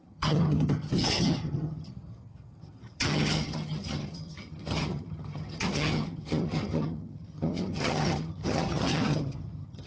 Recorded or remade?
remade